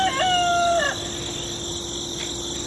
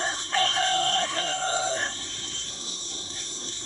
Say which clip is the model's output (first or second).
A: second